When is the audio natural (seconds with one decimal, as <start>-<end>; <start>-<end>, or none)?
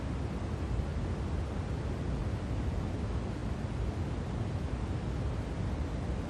0.0-6.3